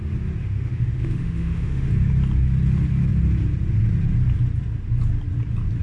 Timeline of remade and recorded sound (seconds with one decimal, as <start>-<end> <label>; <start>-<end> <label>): 0.0-0.4 recorded; 0.4-1.9 remade; 1.9-5.8 recorded